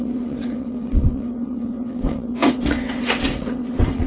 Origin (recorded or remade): remade